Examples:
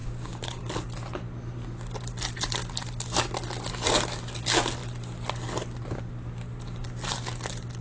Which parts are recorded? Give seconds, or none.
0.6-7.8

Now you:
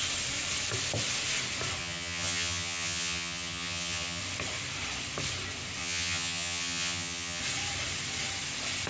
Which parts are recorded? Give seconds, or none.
0.0-1.8; 4.2-5.8; 7.4-8.9

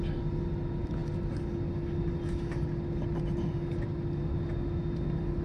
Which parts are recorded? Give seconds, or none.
0.0-5.4